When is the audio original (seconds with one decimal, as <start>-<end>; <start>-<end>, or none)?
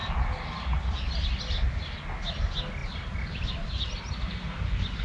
0.0-2.8; 3.5-5.0